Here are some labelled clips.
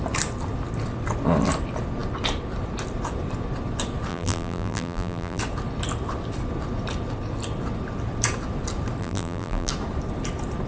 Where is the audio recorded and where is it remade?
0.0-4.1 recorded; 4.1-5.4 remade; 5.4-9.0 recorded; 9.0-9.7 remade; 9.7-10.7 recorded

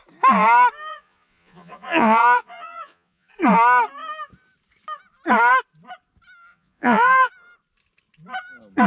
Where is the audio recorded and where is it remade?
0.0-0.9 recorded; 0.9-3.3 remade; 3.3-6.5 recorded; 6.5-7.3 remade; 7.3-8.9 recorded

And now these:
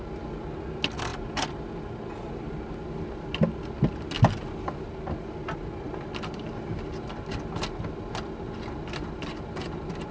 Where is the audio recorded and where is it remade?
0.0-10.1 recorded

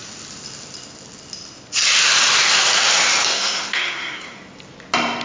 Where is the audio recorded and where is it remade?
0.0-3.3 recorded; 3.3-4.4 remade; 4.4-5.2 recorded

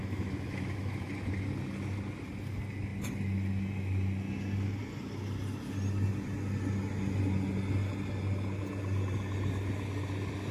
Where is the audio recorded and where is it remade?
0.0-1.0 remade; 1.0-10.5 recorded